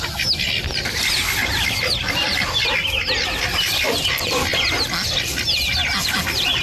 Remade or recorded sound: recorded